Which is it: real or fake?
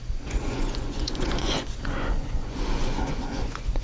fake